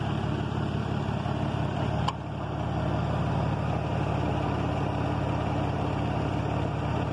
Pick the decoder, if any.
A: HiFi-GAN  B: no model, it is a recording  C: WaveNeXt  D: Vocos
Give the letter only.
B